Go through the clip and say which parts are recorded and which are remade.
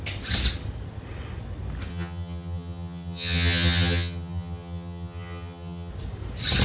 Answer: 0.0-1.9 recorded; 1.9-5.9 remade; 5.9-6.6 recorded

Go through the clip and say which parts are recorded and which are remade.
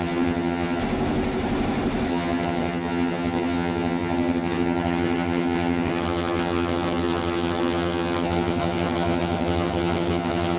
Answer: 0.0-0.8 remade; 0.8-2.1 recorded; 2.1-10.6 remade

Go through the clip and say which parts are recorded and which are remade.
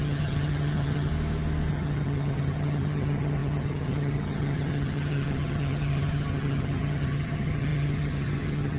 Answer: 0.0-1.1 remade; 1.1-1.7 recorded; 1.7-8.8 remade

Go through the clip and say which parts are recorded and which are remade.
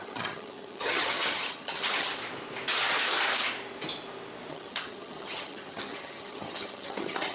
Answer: 0.0-2.1 remade; 2.1-4.5 recorded; 4.5-7.3 remade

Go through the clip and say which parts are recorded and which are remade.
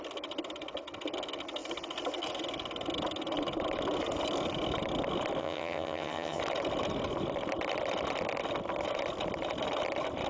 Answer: 0.0-5.4 recorded; 5.4-6.4 remade; 6.4-10.3 recorded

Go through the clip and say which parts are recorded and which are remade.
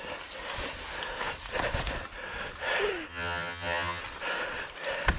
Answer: 0.0-3.1 recorded; 3.1-4.0 remade; 4.0-5.2 recorded